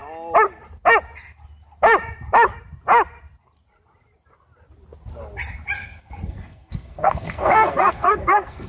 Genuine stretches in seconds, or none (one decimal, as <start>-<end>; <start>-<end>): 0.0-5.8